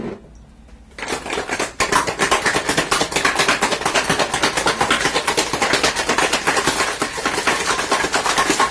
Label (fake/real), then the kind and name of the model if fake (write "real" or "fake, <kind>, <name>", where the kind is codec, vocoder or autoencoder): real